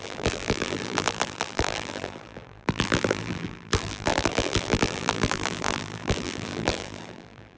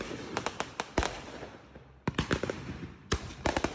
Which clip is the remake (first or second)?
first